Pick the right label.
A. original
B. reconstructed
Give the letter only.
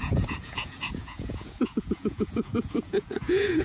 B